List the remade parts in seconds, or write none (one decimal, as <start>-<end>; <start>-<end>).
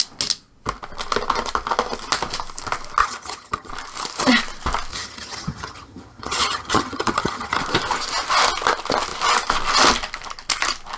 3.0-3.7; 4.9-7.6